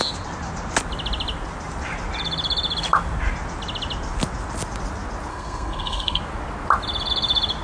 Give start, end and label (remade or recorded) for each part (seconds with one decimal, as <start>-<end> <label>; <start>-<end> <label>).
0.0-5.3 recorded; 5.3-6.2 remade; 6.2-7.6 recorded